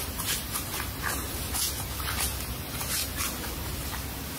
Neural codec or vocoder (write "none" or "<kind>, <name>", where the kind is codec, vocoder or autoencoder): none